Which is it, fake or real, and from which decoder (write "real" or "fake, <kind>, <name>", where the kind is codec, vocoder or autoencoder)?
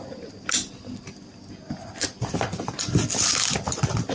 real